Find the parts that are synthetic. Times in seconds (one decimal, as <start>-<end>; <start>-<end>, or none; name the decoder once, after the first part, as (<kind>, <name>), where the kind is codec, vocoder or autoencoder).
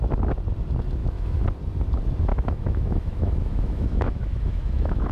1.0-1.5 (autoencoder, DAC-VAE); 2.3-5.1